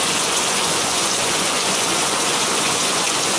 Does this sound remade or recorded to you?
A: remade